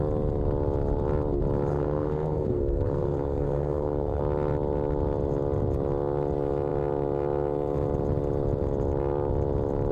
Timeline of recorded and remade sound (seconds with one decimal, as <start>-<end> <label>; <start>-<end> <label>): 0.0-1.7 recorded; 1.7-4.2 remade; 4.2-9.9 recorded